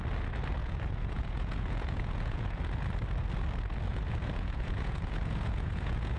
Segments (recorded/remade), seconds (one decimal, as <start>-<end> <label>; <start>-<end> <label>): 0.0-0.6 recorded; 0.6-2.6 remade; 2.6-3.9 recorded; 3.9-6.2 remade